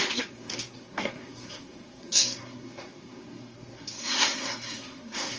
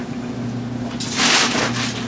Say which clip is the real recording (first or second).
second